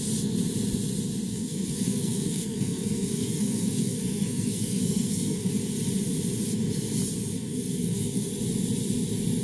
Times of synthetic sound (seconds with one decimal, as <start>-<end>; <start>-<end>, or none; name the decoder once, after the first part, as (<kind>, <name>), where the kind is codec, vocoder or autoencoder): 1.3-5.5 (codec, SNAC); 7.4-8.3